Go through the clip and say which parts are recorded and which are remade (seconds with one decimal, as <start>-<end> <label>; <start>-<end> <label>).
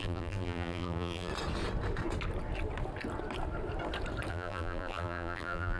0.0-1.3 remade; 1.3-4.3 recorded; 4.3-5.8 remade